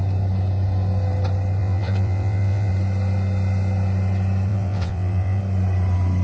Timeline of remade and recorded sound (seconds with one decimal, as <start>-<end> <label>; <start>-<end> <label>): 0.0-1.6 recorded; 1.6-2.7 remade; 2.7-4.5 recorded; 4.5-5.4 remade; 5.4-6.2 recorded